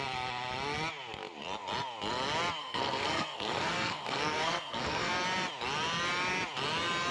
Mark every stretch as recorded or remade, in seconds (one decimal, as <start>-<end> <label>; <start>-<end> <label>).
0.0-2.6 recorded; 2.6-5.1 remade; 5.1-7.1 recorded